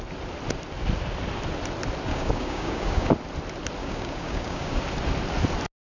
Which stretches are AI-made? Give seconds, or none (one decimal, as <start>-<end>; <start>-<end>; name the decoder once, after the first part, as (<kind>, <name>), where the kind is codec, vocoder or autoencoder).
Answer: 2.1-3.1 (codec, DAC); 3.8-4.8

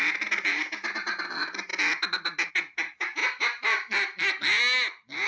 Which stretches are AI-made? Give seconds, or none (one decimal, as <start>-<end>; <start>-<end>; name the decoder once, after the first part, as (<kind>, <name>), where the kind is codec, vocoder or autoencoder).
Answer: none

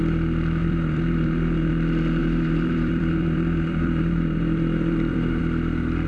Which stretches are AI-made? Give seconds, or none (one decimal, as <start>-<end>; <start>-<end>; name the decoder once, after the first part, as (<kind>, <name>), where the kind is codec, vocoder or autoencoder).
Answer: 0.6-1.7 (vocoder, BigVGAN v2); 2.2-5.4

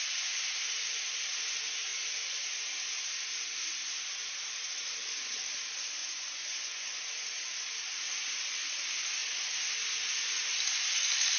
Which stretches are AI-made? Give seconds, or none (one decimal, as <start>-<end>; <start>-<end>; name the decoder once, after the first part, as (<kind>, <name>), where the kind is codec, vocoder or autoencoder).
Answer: 6.0-7.0 (vocoder, Vocos)

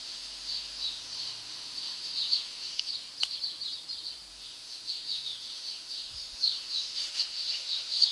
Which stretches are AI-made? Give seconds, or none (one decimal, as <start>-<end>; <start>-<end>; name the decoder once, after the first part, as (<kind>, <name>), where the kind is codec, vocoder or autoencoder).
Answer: 0.0-2.9 (autoencoder, DAC-VAE); 4.3-8.1